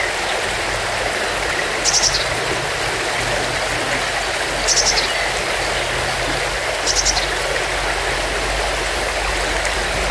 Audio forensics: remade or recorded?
recorded